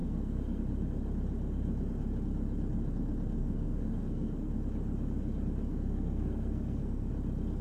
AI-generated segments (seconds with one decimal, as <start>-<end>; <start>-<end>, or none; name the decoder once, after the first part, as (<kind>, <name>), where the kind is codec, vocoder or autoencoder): 0.0-0.6 (codec, SNAC); 3.4-4.5; 5.7-7.1